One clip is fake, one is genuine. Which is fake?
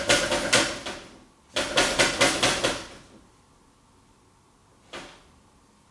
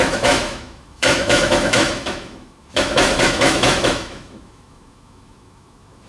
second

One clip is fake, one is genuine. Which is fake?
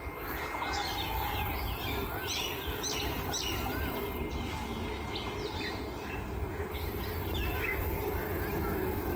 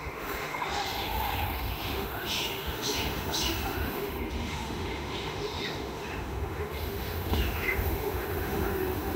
second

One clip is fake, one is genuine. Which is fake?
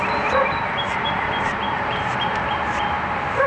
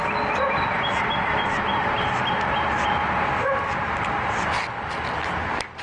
first